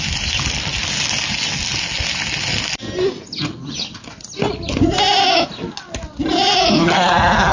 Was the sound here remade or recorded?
recorded